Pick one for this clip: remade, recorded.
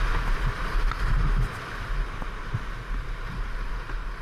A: recorded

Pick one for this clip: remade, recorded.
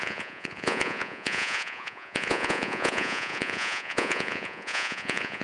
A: remade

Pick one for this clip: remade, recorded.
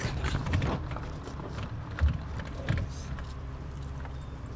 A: remade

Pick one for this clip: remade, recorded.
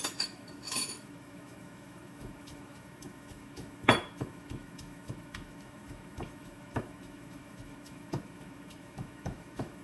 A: remade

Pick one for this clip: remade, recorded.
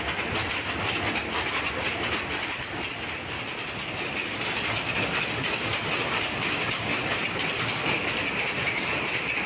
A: recorded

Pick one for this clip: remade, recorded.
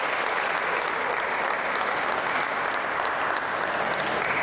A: recorded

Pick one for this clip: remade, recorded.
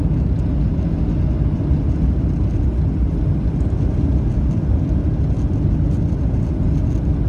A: recorded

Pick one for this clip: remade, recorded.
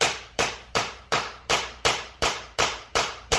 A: remade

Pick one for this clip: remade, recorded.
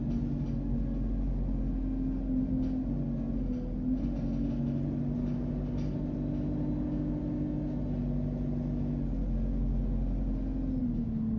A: recorded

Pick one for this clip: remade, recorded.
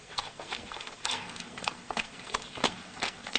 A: remade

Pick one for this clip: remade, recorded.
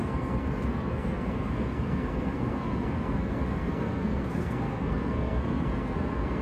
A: remade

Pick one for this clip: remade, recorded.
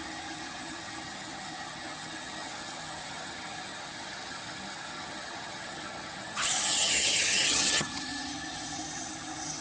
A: remade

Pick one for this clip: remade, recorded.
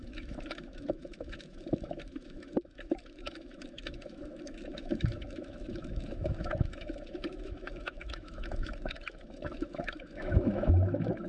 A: remade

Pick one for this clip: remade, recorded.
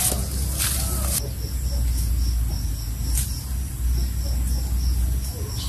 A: recorded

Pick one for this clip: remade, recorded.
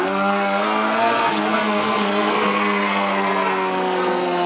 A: remade